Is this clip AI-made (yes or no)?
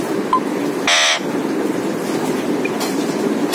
no